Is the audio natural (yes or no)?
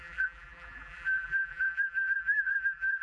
no